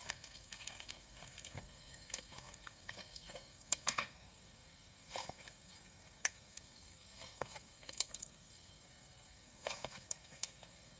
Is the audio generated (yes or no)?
yes